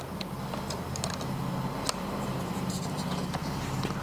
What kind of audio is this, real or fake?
real